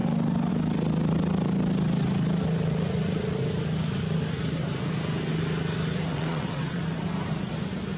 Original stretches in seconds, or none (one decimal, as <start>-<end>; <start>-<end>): 0.0-6.1; 6.8-8.0